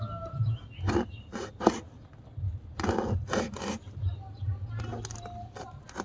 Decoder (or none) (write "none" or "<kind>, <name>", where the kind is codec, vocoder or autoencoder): none